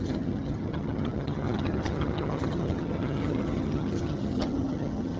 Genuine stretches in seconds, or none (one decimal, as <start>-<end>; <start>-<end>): none